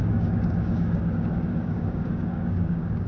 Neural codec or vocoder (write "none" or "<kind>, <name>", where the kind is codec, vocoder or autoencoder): codec, DAC